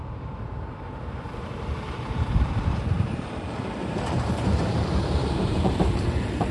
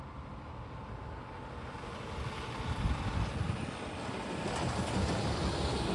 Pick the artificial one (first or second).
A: first